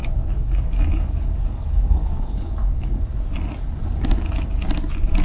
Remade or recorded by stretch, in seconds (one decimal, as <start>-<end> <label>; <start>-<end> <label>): 0.0-3.0 remade; 3.0-5.2 recorded